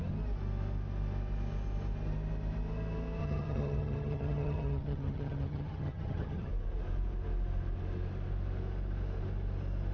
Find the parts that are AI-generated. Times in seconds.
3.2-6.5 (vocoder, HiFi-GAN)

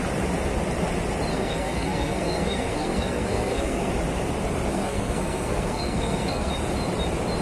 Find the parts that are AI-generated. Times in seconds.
1.3-3.9 (codec, SNAC); 4.7-6.5

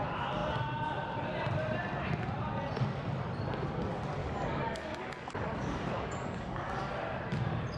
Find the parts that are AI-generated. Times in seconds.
4.2-6.9 (codec, DAC)

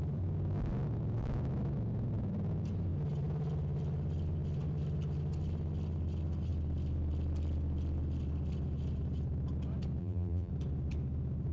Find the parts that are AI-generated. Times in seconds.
10.0-10.5 (vocoder, BigVGAN v2)

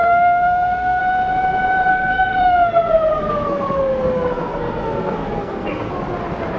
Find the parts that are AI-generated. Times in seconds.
0.0-1.0 (codec, SNAC); 1.9-5.9

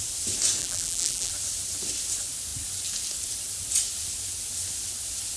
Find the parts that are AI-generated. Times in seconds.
0.6-1.3 (vocoder, BigVGAN v2)

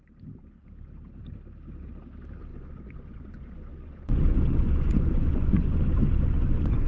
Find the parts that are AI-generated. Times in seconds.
2.5-6.9 (vocoder, Vocos)